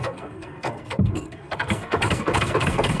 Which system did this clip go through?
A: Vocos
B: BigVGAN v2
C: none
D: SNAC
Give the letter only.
D